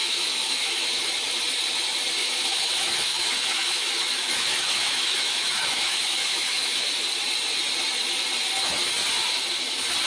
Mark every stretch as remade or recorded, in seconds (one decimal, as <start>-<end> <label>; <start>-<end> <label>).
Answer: 0.0-1.4 remade; 1.4-2.2 recorded; 2.2-6.9 remade; 6.9-10.1 recorded